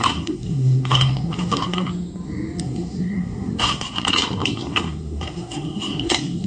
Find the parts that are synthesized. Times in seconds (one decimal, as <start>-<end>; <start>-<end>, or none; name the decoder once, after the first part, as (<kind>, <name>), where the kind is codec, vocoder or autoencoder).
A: 0.0-1.9 (codec, SNAC); 2.6-6.5